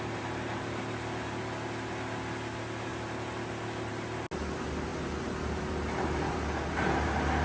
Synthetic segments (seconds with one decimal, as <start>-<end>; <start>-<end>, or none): none